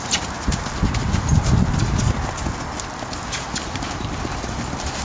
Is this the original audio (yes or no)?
yes